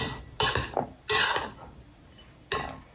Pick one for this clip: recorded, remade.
recorded